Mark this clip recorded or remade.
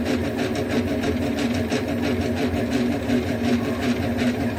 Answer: recorded